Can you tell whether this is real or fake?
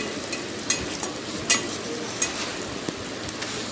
real